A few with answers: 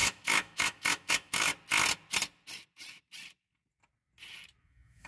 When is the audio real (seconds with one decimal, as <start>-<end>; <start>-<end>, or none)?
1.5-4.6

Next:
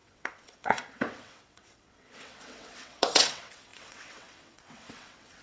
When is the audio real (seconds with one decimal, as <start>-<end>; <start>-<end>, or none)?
none

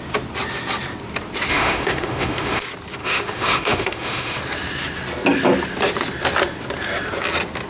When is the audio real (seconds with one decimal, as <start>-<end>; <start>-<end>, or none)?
0.0-1.5; 2.6-3.0; 4.4-7.7

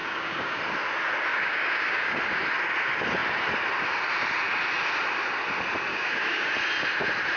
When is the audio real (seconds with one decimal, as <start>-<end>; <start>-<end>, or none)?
0.6-1.3; 2.2-5.9; 6.5-7.4

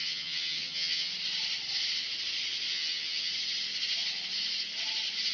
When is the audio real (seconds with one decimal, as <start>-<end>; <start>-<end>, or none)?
1.1-2.7; 3.3-5.3

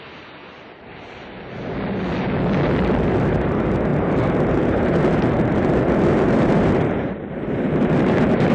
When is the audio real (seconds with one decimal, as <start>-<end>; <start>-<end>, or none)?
0.0-3.9

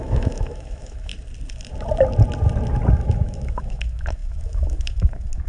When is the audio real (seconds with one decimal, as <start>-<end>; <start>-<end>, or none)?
1.1-2.9